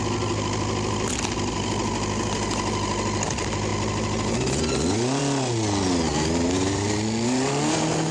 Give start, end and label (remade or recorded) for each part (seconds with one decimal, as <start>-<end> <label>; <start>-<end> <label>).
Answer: 0.0-8.1 recorded